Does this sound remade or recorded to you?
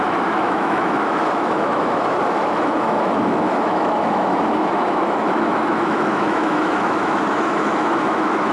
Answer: remade